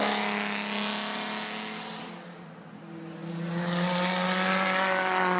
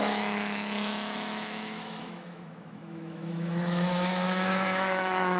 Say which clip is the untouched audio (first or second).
first